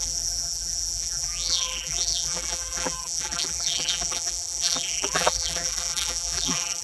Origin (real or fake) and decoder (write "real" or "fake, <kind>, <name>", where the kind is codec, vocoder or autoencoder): fake, vocoder, BigVGAN v2